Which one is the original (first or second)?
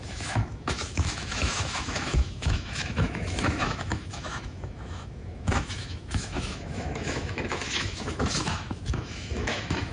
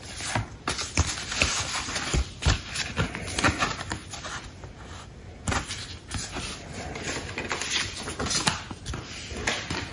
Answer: second